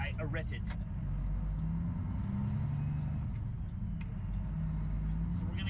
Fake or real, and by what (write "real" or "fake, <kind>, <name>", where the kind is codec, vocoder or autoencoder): real